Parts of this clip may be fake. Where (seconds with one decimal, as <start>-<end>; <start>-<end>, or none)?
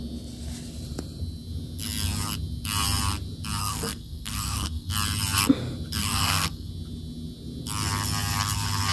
3.6-4.9; 6.0-6.7